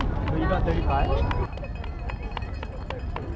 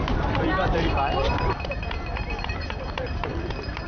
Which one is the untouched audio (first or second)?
first